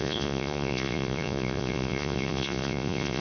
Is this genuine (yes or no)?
no